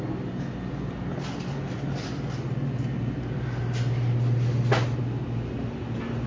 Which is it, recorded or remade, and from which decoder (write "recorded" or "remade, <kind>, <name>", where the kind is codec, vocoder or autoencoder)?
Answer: recorded